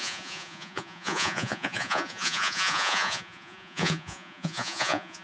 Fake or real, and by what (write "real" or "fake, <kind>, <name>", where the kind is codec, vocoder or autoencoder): fake, vocoder, Vocos